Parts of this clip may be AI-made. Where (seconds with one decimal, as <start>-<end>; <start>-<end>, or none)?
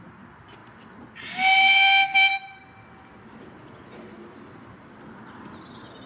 none